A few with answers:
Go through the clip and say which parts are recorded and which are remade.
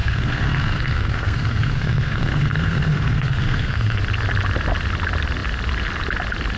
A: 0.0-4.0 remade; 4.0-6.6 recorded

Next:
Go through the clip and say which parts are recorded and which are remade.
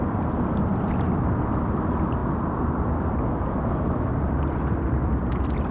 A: 0.0-2.2 recorded; 2.2-5.7 remade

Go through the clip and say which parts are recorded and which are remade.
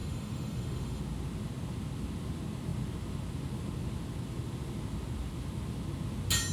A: 0.0-1.0 remade; 1.0-6.5 recorded